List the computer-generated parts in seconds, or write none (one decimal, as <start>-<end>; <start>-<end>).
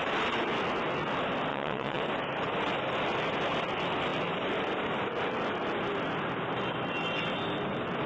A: 1.5-2.0